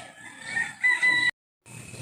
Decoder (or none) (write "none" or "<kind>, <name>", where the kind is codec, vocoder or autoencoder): none